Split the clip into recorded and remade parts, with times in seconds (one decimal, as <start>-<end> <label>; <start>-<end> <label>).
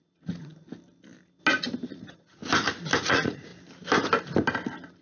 0.0-0.5 remade; 0.5-1.9 recorded; 1.9-2.4 remade; 2.4-3.0 recorded; 3.0-3.5 remade; 3.5-5.0 recorded